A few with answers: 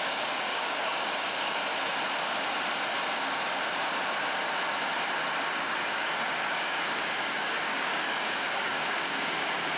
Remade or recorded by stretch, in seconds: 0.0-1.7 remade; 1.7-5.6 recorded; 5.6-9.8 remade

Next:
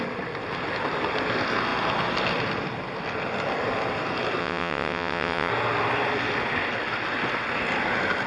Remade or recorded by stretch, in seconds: 0.0-4.4 recorded; 4.4-5.5 remade; 5.5-8.3 recorded

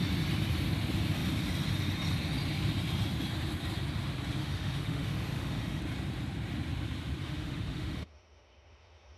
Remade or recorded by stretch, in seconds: 0.0-4.4 recorded; 4.4-5.8 remade; 5.8-7.2 recorded; 7.2-9.2 remade

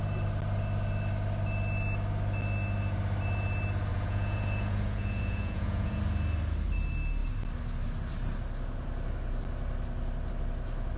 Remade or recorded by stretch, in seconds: 0.0-3.9 recorded; 3.9-6.0 remade; 6.0-11.0 recorded

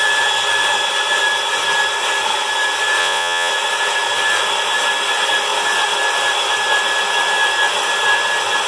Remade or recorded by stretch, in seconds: 0.0-3.0 recorded; 3.0-3.5 remade; 3.5-8.7 recorded

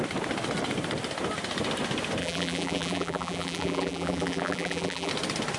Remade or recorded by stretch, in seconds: 0.0-2.2 recorded; 2.2-5.1 remade; 5.1-5.6 recorded

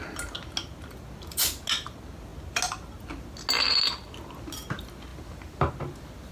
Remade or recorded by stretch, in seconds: 0.0-6.3 recorded

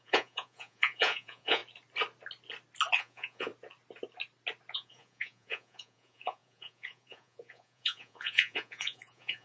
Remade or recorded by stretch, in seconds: 0.0-1.6 remade; 1.6-3.0 recorded; 3.0-3.5 remade; 3.5-4.7 recorded; 4.7-9.4 remade